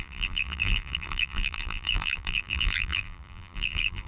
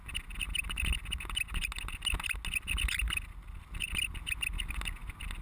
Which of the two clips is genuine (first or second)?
second